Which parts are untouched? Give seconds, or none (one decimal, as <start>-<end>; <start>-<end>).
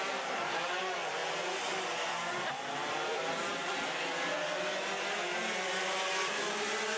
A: 1.2-2.3; 3.1-7.0